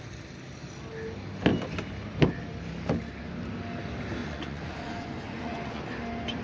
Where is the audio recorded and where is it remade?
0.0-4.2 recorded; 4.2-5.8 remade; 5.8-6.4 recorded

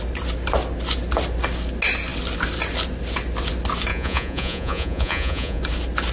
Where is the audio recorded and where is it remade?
0.0-3.9 recorded; 3.9-5.6 remade; 5.6-6.1 recorded

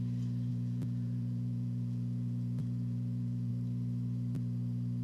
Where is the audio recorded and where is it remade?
0.0-0.5 recorded; 0.5-3.5 remade; 3.5-5.0 recorded

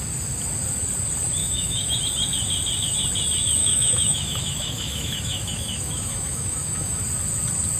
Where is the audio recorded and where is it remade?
0.0-1.4 recorded; 1.4-2.0 remade; 2.0-3.6 recorded; 3.6-7.0 remade; 7.0-7.8 recorded

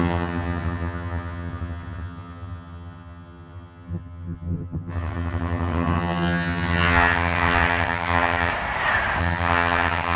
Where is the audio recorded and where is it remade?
0.0-8.5 remade; 8.5-9.2 recorded; 9.2-10.2 remade

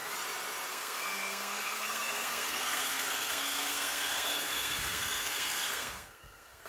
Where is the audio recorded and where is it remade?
0.0-0.7 recorded; 0.7-6.7 remade

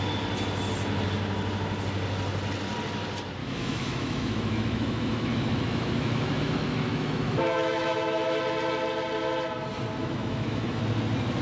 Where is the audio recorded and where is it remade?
0.0-3.4 recorded; 3.4-8.4 remade; 8.4-10.0 recorded; 10.0-10.8 remade; 10.8-11.4 recorded

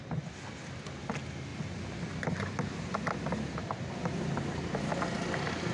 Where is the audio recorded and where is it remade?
0.0-5.7 recorded